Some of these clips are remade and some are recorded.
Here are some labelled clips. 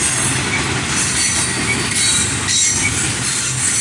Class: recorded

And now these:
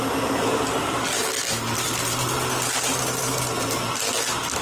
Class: recorded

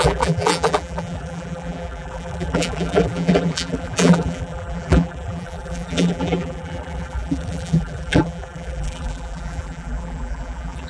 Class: remade